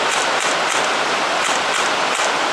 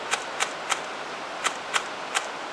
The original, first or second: second